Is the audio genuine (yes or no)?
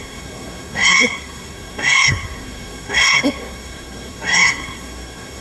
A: no